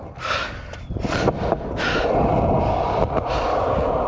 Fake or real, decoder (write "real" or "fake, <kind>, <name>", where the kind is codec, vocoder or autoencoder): real